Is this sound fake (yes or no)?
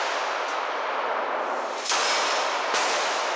no